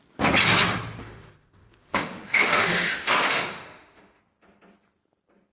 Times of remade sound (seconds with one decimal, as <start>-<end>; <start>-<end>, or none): 1.0-4.2